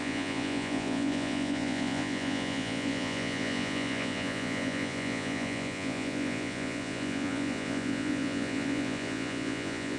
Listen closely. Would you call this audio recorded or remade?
remade